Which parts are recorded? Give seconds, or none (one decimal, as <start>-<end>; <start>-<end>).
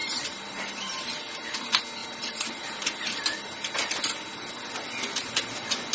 0.8-2.0; 2.7-5.9